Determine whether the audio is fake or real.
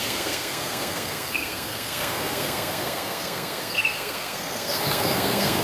fake